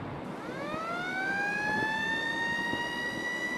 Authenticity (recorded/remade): recorded